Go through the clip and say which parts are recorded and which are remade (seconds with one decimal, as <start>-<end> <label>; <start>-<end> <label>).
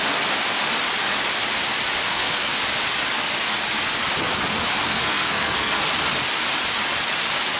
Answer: 0.0-2.1 recorded; 2.1-2.6 remade; 2.6-4.9 recorded; 4.9-5.8 remade; 5.8-7.6 recorded